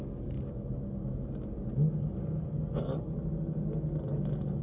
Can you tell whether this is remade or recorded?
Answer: recorded